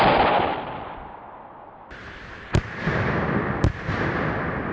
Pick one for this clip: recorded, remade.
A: recorded